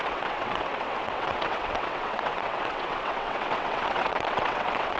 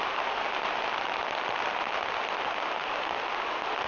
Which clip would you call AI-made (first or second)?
first